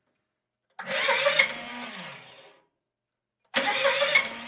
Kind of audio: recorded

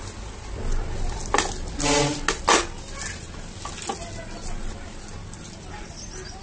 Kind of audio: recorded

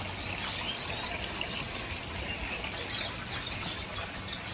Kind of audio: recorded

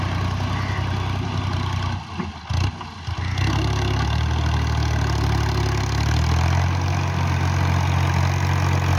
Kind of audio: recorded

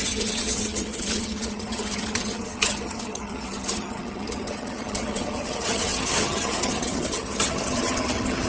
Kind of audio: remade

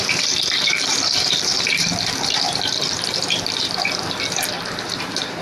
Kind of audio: remade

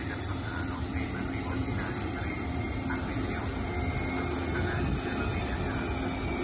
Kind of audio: recorded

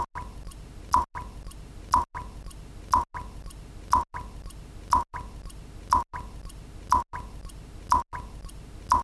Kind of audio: recorded